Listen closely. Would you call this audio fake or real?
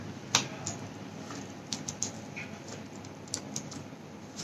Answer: real